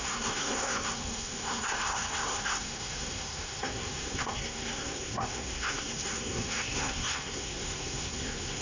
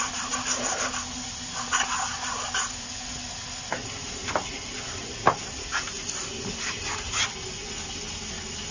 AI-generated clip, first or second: first